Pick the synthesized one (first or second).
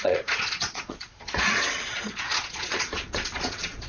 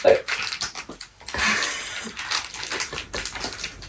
first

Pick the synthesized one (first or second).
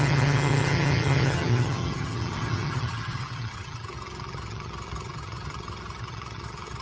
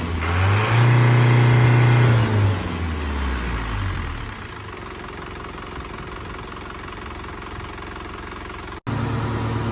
first